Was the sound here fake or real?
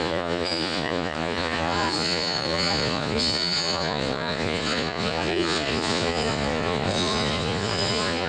fake